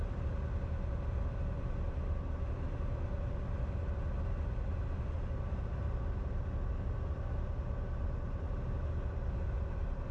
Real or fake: real